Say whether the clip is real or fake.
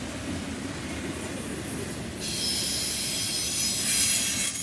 real